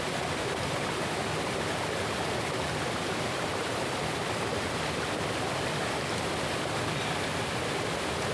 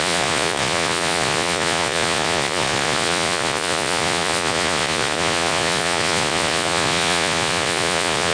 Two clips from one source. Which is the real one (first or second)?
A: first